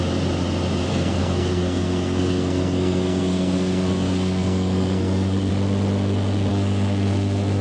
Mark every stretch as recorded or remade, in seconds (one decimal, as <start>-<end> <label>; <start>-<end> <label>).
0.0-0.9 recorded; 0.9-5.5 remade; 5.5-6.5 recorded; 6.5-7.6 remade